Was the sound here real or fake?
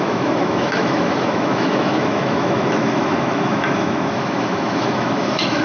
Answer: fake